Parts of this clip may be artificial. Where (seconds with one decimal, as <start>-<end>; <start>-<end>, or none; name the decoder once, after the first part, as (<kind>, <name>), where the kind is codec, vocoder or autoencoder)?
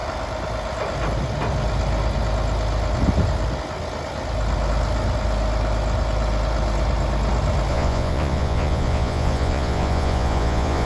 7.7-10.9 (vocoder, Vocos)